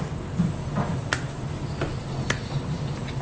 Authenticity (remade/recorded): recorded